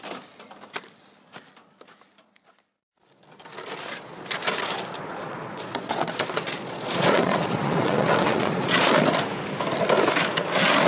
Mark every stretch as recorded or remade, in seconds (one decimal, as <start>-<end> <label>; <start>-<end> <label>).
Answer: 0.0-5.1 recorded; 5.1-8.9 remade; 8.9-10.9 recorded